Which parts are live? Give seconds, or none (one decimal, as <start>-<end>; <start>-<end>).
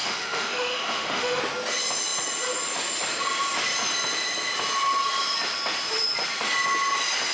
1.4-7.3